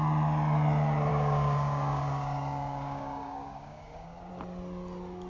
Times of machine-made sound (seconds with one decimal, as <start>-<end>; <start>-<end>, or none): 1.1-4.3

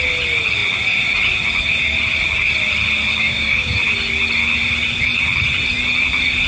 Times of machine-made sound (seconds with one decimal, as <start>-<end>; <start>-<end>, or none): 3.1-3.7

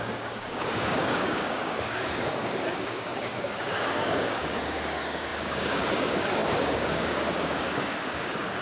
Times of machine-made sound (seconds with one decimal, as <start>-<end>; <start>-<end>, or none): 0.0-8.6